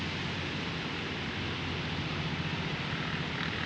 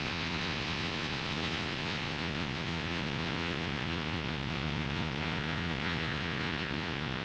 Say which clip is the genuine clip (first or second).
first